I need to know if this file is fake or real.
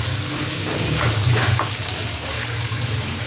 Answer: fake